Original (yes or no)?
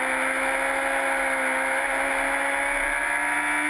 yes